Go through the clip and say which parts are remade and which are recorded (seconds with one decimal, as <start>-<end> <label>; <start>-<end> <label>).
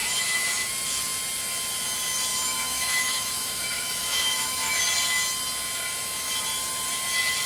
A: 0.0-0.7 remade; 0.7-2.3 recorded; 2.3-4.8 remade; 4.8-7.5 recorded